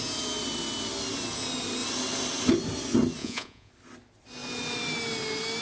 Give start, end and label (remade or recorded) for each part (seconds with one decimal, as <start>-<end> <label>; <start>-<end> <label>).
0.0-3.2 recorded; 3.2-3.7 remade; 3.7-5.6 recorded

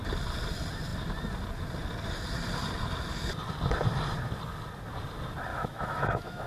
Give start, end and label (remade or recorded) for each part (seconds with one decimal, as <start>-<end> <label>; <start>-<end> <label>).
0.0-5.5 recorded; 5.5-6.5 remade

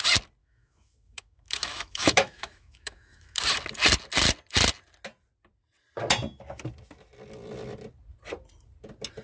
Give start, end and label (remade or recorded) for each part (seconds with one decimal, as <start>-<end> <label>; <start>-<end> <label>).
0.0-0.4 recorded; 0.4-3.4 remade; 3.4-9.2 recorded

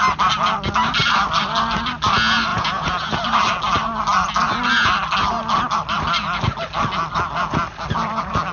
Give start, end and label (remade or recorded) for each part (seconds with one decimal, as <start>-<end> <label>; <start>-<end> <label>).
0.0-2.5 recorded; 2.5-3.1 remade; 3.1-8.5 recorded

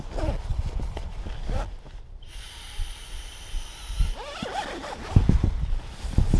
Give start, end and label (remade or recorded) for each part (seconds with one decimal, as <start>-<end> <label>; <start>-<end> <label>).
0.0-0.5 recorded; 0.5-3.6 remade; 3.6-4.8 recorded; 4.8-6.4 remade

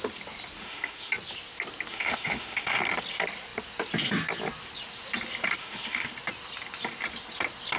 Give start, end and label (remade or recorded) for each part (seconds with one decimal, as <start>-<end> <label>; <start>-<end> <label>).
0.0-0.6 recorded; 0.6-1.1 remade; 1.1-1.9 recorded; 1.9-2.8 remade; 2.8-5.6 recorded; 5.6-6.1 remade; 6.1-7.8 recorded